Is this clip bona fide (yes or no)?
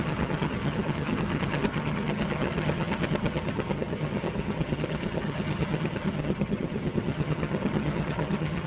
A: no